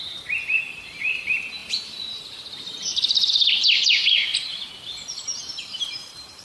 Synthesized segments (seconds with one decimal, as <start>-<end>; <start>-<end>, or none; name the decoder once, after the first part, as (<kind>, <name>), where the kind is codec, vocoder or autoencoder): 0.0-4.3 (vocoder, BigVGAN v2); 5.6-6.4